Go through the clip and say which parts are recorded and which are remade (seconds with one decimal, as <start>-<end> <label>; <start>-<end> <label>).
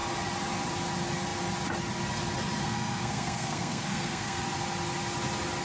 0.0-2.6 recorded; 2.6-4.4 remade; 4.4-5.6 recorded